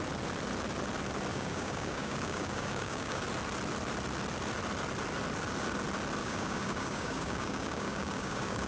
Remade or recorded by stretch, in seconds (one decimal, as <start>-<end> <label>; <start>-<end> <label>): 0.0-1.3 recorded; 1.3-3.2 remade; 3.2-6.2 recorded; 6.2-8.7 remade